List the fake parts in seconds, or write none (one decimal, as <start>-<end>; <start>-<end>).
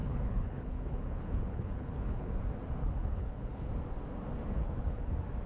0.0-2.4; 2.8-3.7; 4.6-5.1